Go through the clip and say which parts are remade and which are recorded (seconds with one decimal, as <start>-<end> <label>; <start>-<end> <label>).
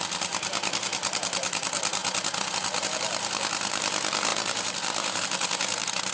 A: 0.0-2.0 remade; 2.0-2.8 recorded; 2.8-6.1 remade